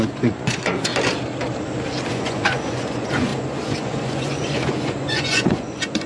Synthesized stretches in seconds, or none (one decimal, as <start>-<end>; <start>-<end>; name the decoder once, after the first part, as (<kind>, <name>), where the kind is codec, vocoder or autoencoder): 0.0-0.9 (vocoder, Vocos); 2.1-6.1